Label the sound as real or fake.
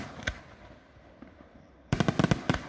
real